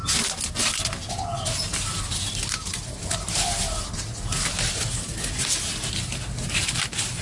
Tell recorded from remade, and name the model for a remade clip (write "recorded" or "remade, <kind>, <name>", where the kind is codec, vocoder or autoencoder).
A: recorded